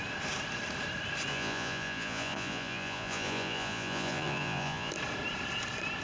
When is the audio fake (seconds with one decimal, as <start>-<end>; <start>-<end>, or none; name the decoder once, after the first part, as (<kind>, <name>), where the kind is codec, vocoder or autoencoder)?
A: 1.3-4.9 (vocoder, Vocos)